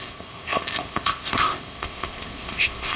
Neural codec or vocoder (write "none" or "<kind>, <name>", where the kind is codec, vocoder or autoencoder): codec, ZipCodec